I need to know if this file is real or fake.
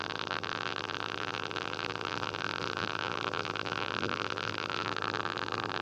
fake